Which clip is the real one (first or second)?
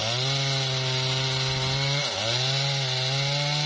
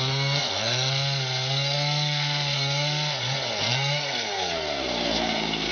first